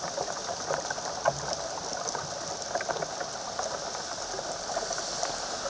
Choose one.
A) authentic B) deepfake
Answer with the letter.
A